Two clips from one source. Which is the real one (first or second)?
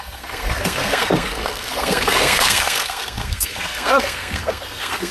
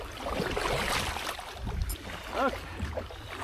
second